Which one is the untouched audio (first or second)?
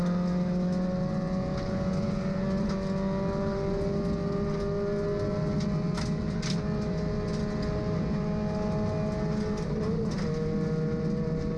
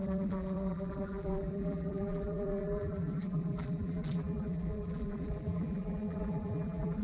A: first